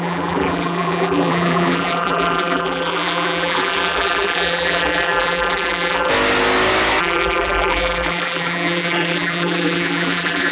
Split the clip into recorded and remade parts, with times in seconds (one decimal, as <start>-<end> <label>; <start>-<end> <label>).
0.0-6.1 remade; 6.1-7.0 recorded; 7.0-10.5 remade